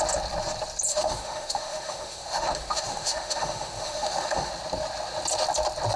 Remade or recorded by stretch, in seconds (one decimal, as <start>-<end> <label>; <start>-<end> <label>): 0.0-0.9 recorded; 0.9-4.5 remade; 4.5-6.0 recorded